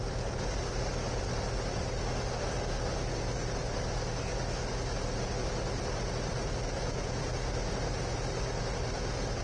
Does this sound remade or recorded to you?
recorded